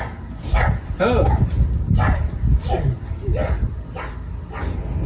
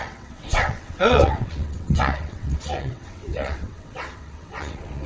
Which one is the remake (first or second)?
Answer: second